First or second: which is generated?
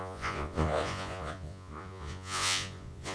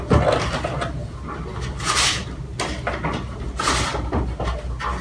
first